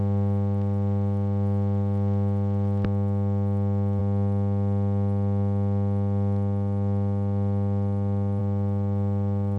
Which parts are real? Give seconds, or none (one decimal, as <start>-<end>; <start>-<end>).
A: 0.0-9.6